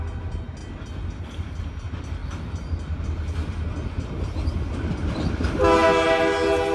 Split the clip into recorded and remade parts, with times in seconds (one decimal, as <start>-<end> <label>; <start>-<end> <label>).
0.0-6.7 recorded